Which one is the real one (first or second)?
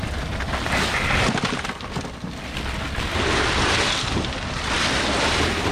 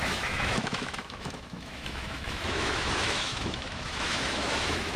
first